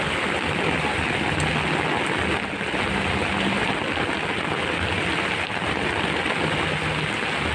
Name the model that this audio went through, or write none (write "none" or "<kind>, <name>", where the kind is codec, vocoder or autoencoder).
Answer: none